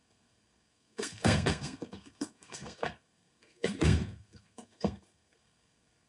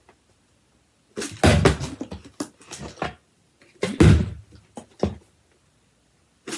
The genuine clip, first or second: second